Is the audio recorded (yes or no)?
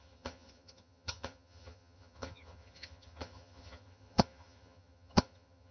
no